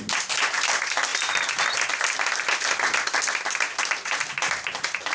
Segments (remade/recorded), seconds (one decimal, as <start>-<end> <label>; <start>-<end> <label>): 0.0-5.1 recorded